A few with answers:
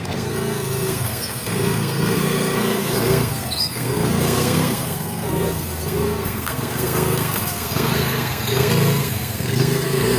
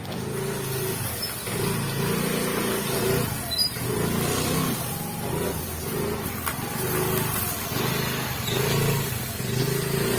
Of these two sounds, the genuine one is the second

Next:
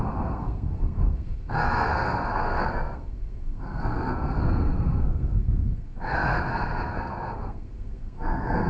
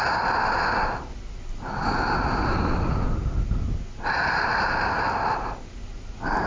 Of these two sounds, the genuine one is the second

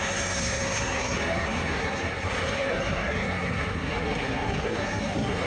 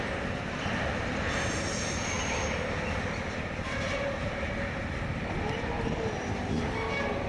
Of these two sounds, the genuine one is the second